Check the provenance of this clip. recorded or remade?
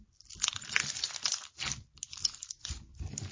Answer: recorded